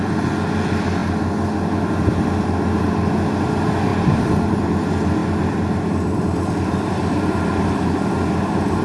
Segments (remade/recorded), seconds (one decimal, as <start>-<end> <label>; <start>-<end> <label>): 0.0-3.9 recorded; 3.9-4.4 remade; 4.4-8.8 recorded